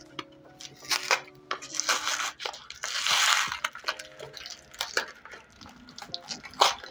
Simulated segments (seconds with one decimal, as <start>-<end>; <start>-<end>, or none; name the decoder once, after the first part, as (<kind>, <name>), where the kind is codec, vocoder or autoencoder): none